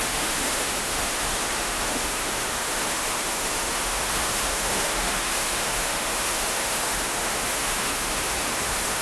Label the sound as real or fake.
fake